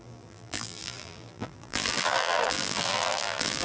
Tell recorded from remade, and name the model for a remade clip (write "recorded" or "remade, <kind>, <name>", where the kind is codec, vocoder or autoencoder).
remade, vocoder, BigVGAN v2